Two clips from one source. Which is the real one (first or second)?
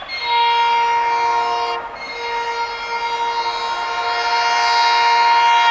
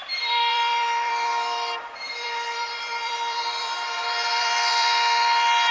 first